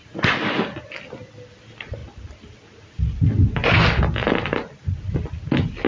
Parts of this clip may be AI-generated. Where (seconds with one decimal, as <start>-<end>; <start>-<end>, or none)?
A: none